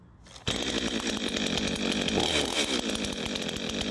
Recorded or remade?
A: recorded